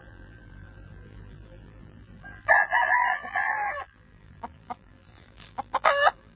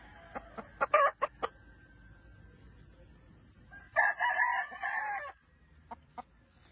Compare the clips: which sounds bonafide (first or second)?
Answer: second